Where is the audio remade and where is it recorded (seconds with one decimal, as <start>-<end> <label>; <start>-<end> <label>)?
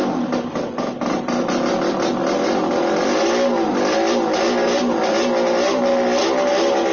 0.0-6.9 recorded